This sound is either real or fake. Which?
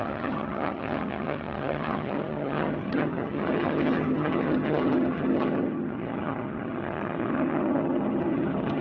fake